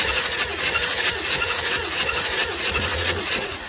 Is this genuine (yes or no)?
no